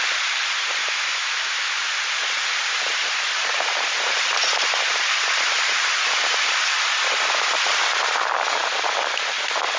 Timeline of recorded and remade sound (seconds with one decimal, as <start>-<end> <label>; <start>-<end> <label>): 0.0-0.8 recorded; 0.8-1.7 remade; 1.7-9.8 recorded